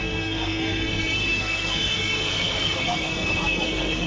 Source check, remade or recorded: remade